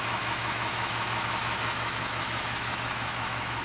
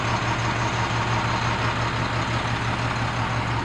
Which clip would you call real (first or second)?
second